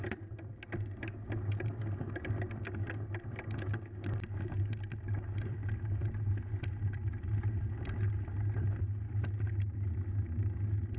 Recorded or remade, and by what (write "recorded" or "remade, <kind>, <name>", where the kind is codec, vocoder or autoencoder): recorded